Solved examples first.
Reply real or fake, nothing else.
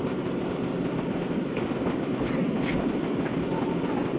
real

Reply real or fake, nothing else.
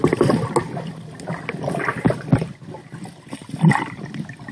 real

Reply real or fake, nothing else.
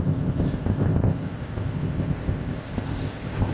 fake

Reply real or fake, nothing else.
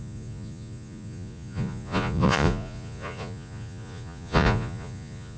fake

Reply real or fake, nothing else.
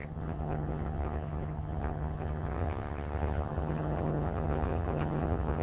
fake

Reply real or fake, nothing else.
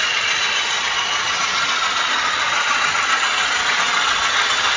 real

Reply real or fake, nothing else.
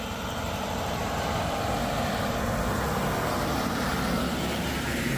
fake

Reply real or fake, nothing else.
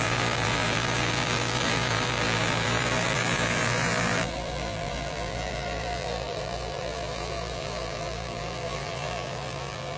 fake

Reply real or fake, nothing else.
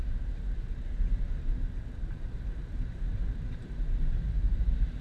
fake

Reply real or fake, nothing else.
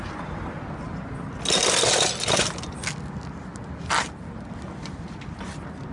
real